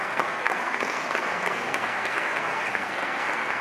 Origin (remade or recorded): remade